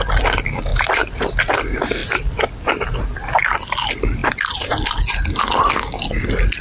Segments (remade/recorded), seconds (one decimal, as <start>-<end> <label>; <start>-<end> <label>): 0.0-0.7 recorded; 0.7-1.3 remade; 1.3-6.6 recorded